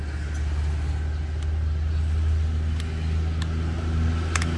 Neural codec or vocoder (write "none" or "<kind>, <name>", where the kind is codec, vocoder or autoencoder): none